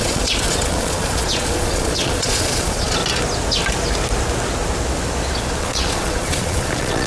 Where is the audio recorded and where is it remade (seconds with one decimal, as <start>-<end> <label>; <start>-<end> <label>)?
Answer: 0.0-3.0 remade; 3.0-5.6 recorded; 5.6-7.1 remade

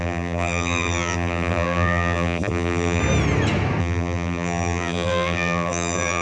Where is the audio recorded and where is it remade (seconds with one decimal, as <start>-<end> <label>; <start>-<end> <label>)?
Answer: 0.0-3.0 remade; 3.0-3.8 recorded; 3.8-6.2 remade